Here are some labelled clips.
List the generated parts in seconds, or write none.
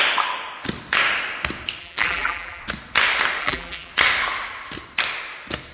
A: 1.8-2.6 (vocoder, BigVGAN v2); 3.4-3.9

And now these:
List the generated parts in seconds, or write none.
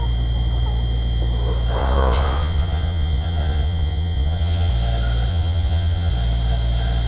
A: 1.8-4.7 (vocoder, Vocos); 5.3-6.1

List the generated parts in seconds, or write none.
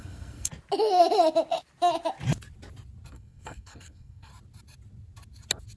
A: 0.0-0.5 (codec, SNAC); 3.1-4.3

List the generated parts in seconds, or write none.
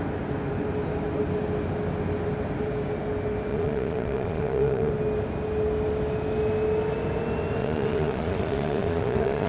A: 3.5-4.9 (vocoder, Vocos); 7.6-9.5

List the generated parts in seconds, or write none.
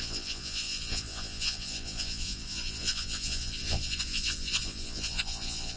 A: 0.0-5.8 (vocoder, Vocos)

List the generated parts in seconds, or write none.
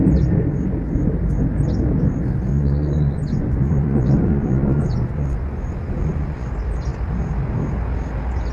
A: 2.5-6.5 (vocoder, Vocos)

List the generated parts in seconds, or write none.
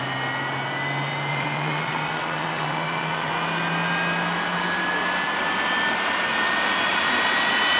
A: 1.3-3.3 (vocoder, WaveNeXt)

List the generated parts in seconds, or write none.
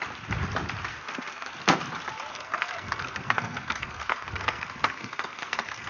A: 0.9-1.8 (codec, SNAC); 2.3-5.9